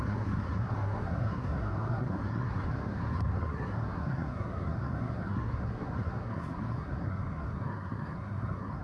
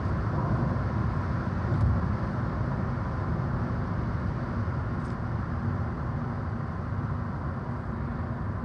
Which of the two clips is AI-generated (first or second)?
first